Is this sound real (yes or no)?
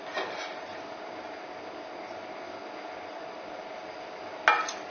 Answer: yes